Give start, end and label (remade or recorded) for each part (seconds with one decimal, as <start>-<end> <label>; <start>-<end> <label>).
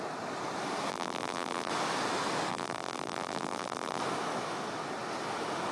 0.0-0.9 recorded; 0.9-1.7 remade; 1.7-2.5 recorded; 2.5-4.0 remade; 4.0-5.7 recorded